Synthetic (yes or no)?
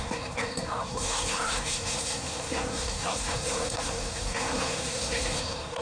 yes